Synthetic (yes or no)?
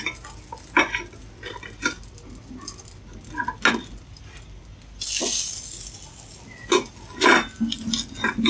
no